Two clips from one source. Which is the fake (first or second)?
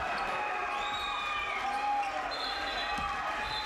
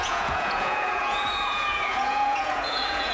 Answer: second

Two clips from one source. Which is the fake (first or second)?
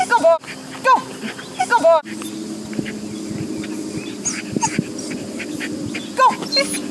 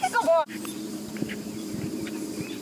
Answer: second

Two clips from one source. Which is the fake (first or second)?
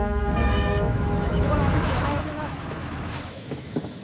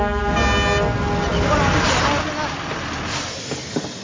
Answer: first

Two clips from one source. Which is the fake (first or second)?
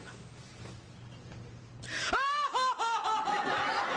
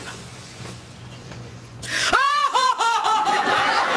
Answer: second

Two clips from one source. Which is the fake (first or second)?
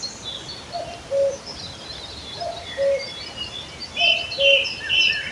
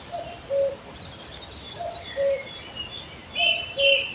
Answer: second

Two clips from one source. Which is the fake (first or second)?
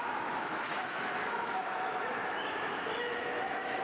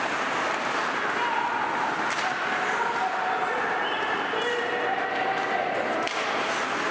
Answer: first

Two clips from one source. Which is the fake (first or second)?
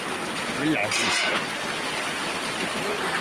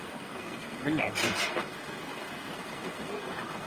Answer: second